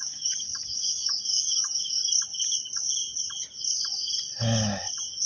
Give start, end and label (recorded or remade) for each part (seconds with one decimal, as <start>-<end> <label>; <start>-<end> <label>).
0.0-2.0 remade; 2.0-5.3 recorded